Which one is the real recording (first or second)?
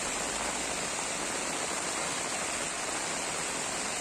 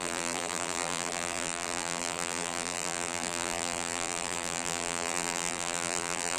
first